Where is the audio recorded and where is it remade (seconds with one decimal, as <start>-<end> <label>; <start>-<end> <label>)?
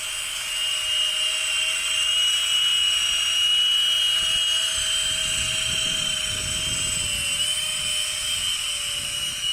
0.0-0.7 recorded; 0.7-2.1 remade; 2.1-5.2 recorded; 5.2-6.7 remade; 6.7-9.5 recorded